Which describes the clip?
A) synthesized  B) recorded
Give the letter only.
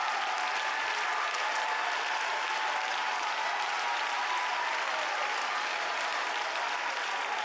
B